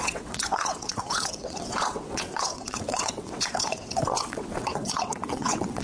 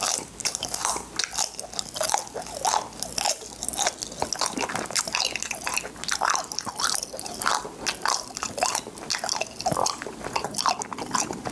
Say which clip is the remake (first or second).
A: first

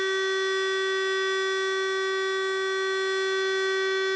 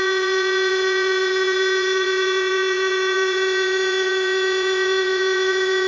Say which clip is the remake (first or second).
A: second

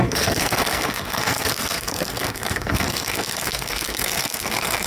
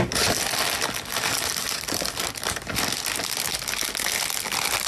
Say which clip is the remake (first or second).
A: first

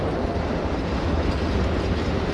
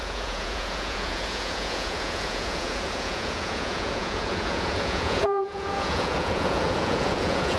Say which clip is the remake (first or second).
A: second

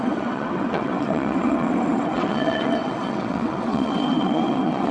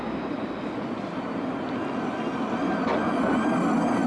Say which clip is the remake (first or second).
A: first